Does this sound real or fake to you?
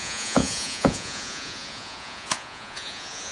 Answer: fake